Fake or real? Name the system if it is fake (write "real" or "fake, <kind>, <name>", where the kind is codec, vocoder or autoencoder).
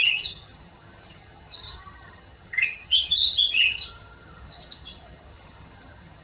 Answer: fake, vocoder, HiFi-GAN